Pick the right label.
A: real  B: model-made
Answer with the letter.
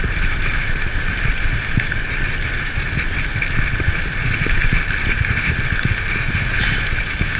A